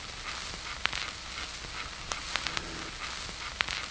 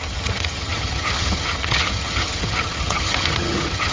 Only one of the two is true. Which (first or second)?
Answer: first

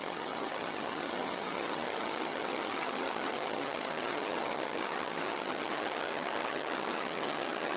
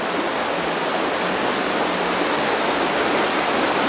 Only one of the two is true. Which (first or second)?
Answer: second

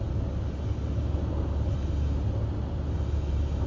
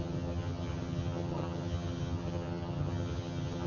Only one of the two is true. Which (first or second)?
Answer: first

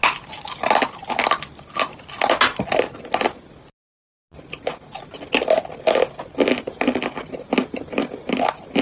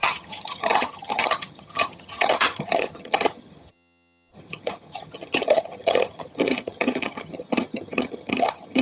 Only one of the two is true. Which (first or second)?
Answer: first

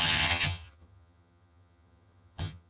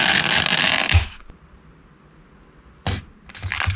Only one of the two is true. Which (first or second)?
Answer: second